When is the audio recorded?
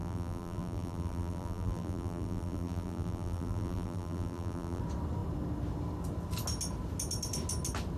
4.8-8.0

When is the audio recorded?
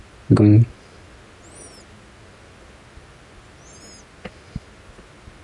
0.0-5.4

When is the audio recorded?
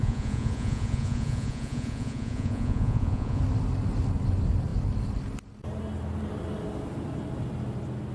3.4-8.1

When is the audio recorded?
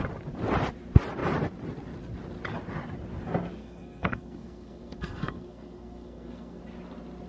0.0-3.6; 6.6-7.3